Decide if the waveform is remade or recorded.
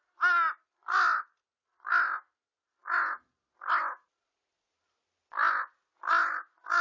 recorded